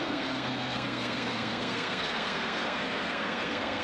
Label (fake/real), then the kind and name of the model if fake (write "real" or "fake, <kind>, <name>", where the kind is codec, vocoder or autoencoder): fake, codec, SNAC